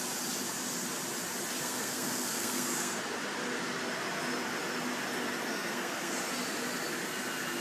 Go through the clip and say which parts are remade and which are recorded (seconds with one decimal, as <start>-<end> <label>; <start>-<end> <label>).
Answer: 0.0-1.6 recorded; 1.6-3.0 remade; 3.0-5.5 recorded; 5.5-6.2 remade; 6.2-7.6 recorded